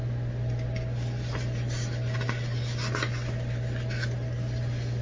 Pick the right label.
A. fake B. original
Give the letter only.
B